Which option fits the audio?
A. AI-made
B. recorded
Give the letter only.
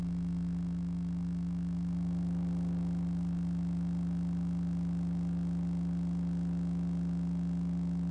B